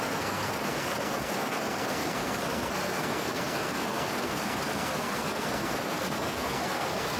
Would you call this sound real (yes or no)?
no